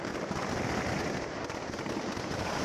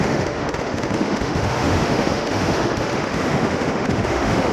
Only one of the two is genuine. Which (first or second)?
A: first